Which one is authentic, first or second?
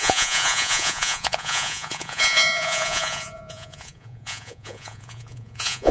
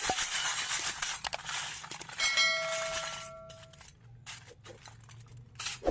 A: second